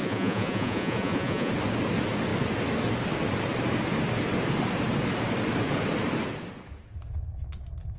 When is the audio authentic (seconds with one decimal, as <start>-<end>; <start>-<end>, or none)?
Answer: 1.5-8.0